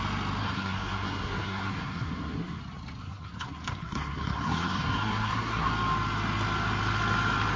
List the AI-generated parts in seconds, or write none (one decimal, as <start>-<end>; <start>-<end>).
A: 0.4-2.6; 3.0-5.7